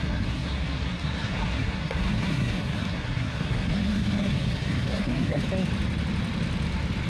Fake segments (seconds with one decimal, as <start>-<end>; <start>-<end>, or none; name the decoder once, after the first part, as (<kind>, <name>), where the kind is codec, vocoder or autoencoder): 0.0-5.4 (codec, SNAC)